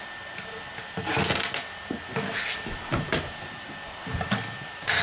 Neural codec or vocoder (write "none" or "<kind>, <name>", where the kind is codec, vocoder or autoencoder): none